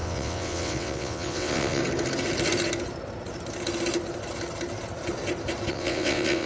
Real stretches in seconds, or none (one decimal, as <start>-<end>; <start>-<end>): 1.8-5.7